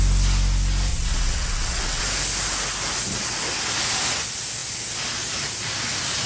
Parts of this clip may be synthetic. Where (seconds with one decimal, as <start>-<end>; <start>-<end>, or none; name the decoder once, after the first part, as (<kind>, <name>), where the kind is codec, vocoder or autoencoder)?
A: 0.9-2.0 (vocoder, WaveNeXt)